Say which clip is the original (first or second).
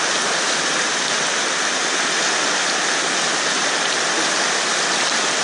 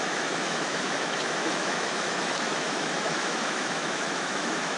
first